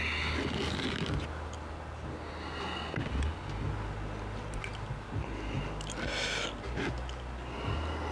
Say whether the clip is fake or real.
real